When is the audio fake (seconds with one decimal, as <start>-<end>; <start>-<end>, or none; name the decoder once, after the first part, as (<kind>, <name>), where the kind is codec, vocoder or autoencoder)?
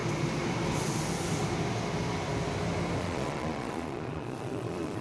3.0-5.0 (vocoder, Vocos)